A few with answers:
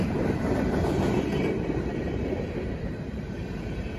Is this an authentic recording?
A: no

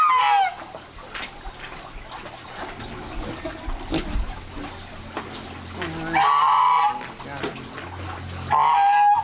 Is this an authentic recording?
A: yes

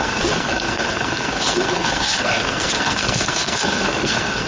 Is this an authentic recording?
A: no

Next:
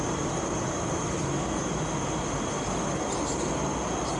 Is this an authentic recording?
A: yes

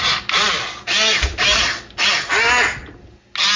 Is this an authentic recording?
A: yes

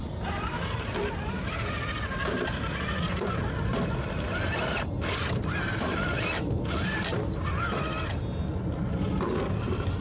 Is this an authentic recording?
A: yes